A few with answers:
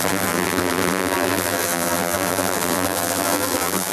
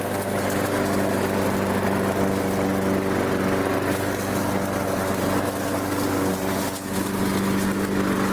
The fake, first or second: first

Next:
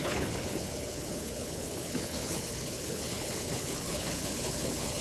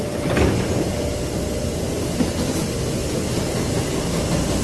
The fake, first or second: first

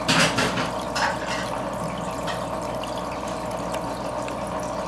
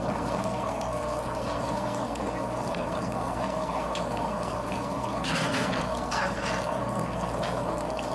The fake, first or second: second